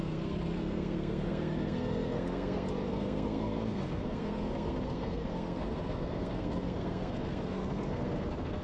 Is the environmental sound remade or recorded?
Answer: remade